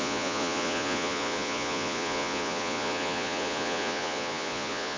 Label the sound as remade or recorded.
remade